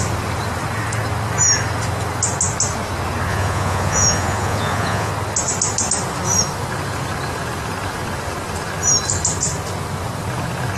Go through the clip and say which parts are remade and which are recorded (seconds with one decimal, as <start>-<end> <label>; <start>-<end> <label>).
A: 0.0-3.3 recorded; 3.3-5.1 remade; 5.1-10.8 recorded